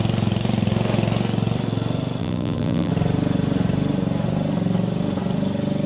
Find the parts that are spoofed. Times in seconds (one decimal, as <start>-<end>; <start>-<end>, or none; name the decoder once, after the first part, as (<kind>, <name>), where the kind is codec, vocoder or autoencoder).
2.2-2.9 (vocoder, BigVGAN v2)